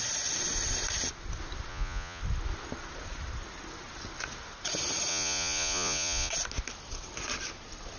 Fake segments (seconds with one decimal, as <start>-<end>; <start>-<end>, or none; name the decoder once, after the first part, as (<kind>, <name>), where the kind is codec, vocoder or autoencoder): 1.7-2.2 (vocoder, Vocos); 5.1-6.3